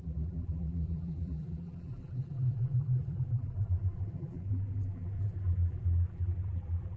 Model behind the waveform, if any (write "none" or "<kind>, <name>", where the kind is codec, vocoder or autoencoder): vocoder, BigVGAN v2